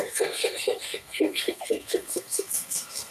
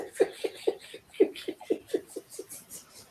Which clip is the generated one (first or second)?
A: first